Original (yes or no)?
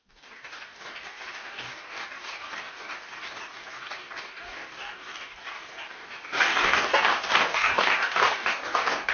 no